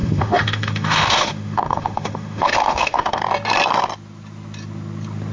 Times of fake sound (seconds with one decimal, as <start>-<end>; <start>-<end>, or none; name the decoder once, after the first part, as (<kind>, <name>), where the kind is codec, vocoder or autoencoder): 0.0-3.2 (autoencoder, DAC-VAE)